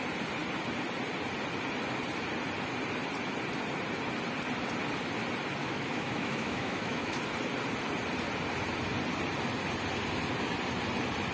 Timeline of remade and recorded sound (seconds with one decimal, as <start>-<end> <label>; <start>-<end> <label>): 0.0-5.6 recorded; 5.6-7.2 remade; 7.2-11.3 recorded